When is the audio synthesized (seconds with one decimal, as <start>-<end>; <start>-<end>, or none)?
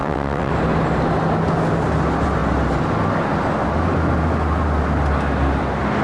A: 0.0-0.5